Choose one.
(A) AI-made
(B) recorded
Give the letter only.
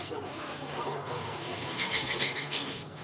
A